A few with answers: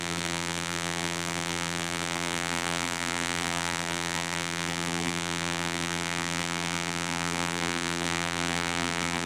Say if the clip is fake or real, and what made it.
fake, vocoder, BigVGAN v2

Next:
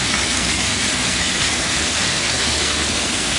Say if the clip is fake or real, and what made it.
fake, codec, SNAC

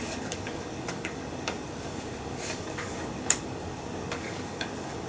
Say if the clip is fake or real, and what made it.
fake, codec, DAC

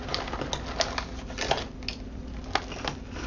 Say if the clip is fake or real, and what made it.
real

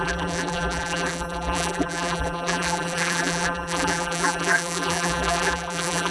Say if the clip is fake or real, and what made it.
fake, vocoder, BigVGAN v2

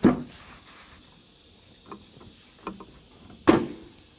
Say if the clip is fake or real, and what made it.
real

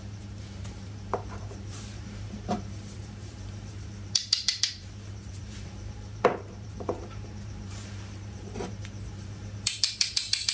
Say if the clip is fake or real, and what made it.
fake, vocoder, BigVGAN v2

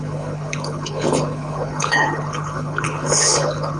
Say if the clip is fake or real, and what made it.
fake, codec, HILCodec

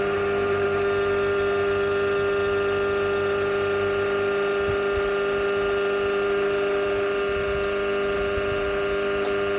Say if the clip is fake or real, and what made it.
real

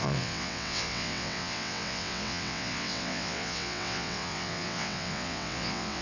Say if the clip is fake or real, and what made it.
fake, vocoder, WaveNeXt